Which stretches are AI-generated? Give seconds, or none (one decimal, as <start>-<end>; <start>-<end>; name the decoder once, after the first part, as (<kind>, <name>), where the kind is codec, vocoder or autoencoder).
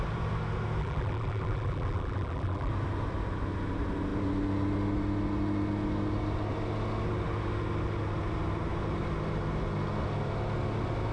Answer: 0.8-2.7 (vocoder, BigVGAN v2)